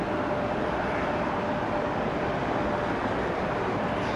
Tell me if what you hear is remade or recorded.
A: recorded